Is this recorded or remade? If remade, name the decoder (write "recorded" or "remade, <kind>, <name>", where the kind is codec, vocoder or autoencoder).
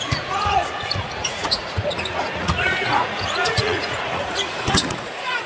remade, vocoder, Vocos